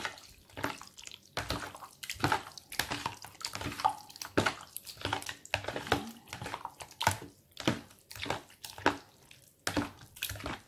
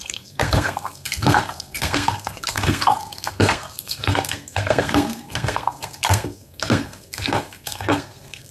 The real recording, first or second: first